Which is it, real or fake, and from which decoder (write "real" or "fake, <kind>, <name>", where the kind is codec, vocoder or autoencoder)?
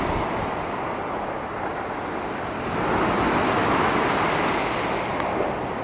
real